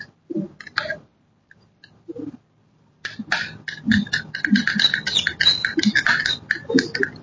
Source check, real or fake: fake